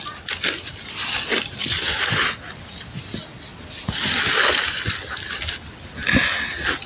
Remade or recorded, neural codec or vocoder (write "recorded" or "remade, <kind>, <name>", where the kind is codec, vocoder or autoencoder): recorded